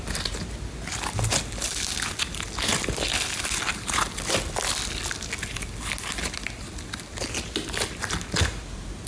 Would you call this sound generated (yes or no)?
no